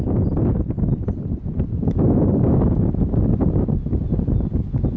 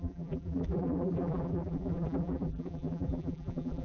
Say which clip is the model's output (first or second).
second